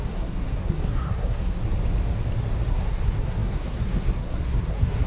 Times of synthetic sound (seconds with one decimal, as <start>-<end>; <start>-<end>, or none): 0.0-1.6; 2.7-5.1